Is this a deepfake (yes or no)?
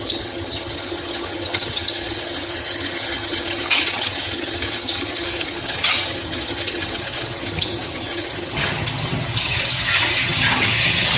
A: yes